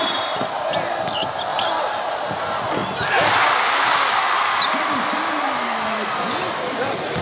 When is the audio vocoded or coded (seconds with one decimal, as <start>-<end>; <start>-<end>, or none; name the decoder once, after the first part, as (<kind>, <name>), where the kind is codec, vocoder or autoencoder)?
1.5-2.1 (vocoder, BigVGAN v2)